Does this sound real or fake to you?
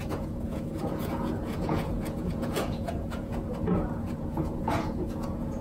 fake